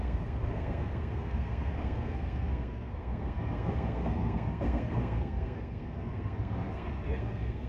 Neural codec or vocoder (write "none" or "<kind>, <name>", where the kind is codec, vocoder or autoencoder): codec, SNAC